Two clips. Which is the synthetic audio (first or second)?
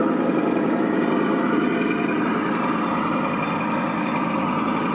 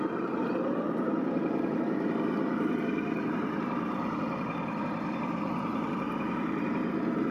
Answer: second